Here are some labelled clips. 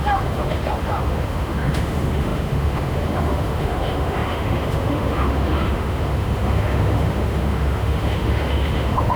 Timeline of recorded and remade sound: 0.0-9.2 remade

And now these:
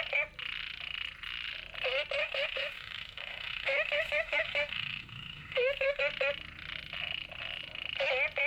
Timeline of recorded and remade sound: 0.0-2.2 recorded; 2.2-6.0 remade; 6.0-8.5 recorded

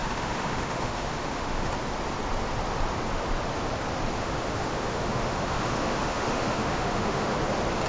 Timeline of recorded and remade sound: 0.0-1.7 remade; 1.7-4.2 recorded; 4.2-7.4 remade; 7.4-7.9 recorded